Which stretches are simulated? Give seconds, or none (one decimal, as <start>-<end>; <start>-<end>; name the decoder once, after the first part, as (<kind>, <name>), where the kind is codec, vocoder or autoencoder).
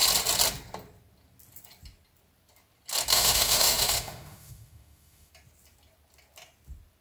3.1-5.3 (autoencoder, DAC-VAE)